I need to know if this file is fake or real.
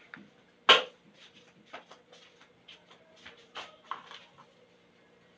real